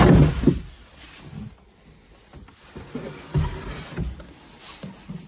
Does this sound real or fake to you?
real